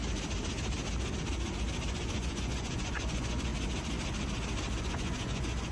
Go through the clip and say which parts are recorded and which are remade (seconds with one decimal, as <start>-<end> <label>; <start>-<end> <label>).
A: 0.0-1.9 recorded; 1.9-3.5 remade; 3.5-4.8 recorded; 4.8-5.7 remade